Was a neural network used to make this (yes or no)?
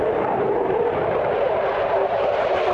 yes